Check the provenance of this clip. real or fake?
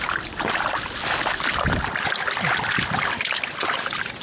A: real